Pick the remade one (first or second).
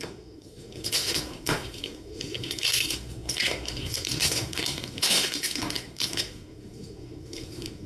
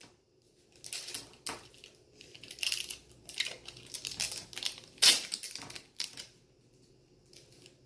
first